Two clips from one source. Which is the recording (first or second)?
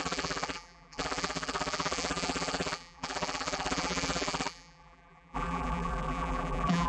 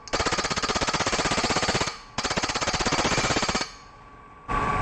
second